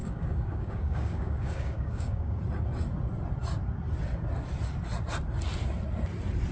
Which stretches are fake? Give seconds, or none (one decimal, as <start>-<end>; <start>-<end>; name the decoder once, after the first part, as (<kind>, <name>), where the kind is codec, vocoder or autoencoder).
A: 0.0-2.4 (codec, DAC)